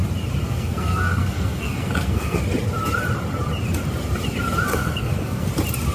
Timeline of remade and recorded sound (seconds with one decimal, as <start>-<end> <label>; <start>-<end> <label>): 0.0-0.4 recorded; 0.4-2.4 remade; 2.4-4.7 recorded; 4.7-5.5 remade; 5.5-5.9 recorded

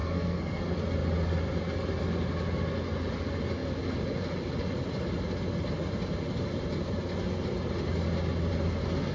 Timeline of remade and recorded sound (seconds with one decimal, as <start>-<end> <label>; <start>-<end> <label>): 0.0-0.6 remade; 0.6-9.1 recorded

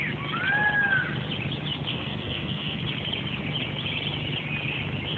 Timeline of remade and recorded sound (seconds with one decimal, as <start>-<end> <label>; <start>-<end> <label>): 0.0-1.9 recorded; 1.9-2.8 remade; 2.8-5.2 recorded

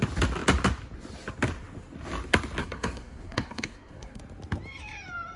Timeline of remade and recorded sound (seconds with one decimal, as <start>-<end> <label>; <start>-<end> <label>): 0.0-2.6 recorded; 2.6-4.2 remade; 4.2-5.4 recorded

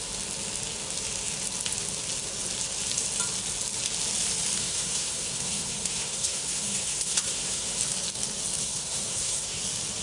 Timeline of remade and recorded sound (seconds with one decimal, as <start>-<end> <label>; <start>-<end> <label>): 0.0-4.6 recorded; 4.6-7.8 remade; 7.8-8.6 recorded; 8.6-9.6 remade; 9.6-10.0 recorded

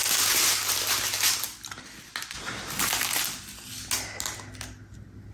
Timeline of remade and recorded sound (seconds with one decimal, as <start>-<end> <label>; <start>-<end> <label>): 0.0-5.3 recorded

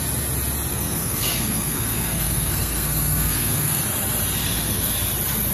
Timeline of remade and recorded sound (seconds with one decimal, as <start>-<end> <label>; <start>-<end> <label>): 0.0-0.7 recorded; 0.7-3.8 remade; 3.8-4.4 recorded; 4.4-4.9 remade; 4.9-5.5 recorded